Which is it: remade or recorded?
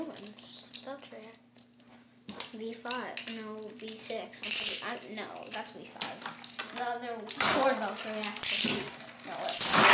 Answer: recorded